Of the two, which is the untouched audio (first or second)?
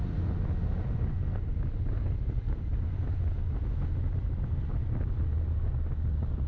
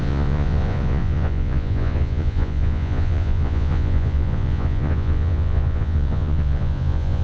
first